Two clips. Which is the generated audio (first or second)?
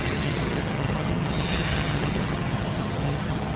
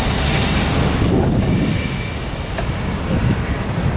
first